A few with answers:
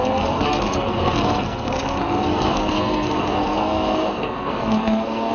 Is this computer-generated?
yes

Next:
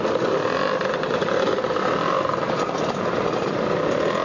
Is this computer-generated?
no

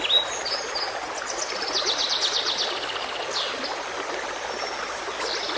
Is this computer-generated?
no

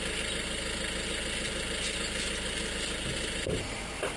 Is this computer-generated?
no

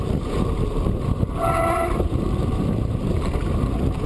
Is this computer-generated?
yes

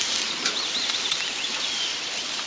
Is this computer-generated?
no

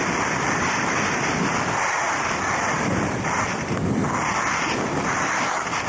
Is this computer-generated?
no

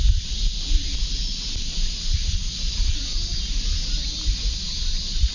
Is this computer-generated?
no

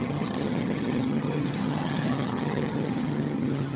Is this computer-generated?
yes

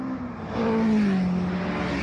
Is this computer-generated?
no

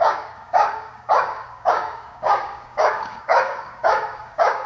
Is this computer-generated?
yes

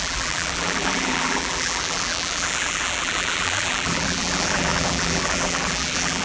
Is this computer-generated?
yes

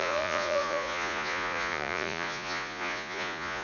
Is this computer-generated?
yes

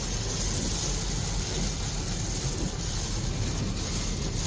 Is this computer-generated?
no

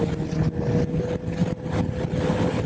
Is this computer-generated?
no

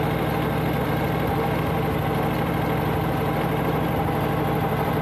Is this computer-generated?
no